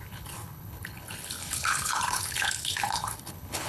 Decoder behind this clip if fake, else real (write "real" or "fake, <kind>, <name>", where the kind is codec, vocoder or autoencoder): fake, codec, HILCodec